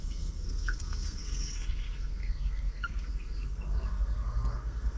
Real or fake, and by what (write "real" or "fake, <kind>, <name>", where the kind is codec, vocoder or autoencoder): fake, codec, SNAC